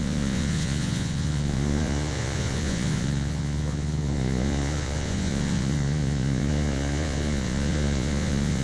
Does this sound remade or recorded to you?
remade